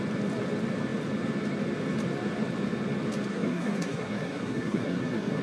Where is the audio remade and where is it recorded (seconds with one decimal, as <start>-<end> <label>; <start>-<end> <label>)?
0.0-3.3 recorded; 3.3-5.4 remade